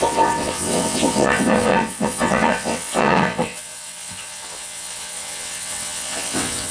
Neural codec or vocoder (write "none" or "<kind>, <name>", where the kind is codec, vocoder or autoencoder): vocoder, WaveNeXt